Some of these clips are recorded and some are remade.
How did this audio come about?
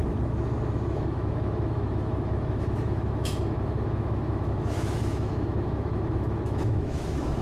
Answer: remade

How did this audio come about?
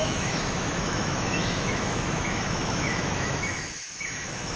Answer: remade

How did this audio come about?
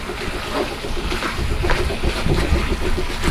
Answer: recorded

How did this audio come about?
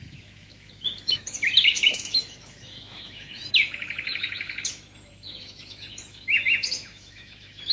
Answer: remade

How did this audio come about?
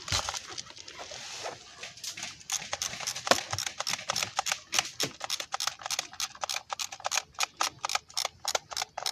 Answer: recorded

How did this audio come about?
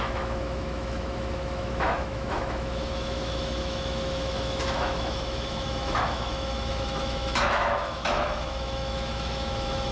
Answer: remade